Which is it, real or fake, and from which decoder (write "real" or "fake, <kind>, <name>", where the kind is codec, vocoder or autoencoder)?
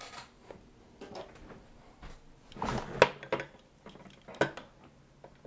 real